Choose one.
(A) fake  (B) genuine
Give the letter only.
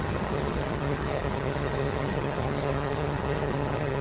A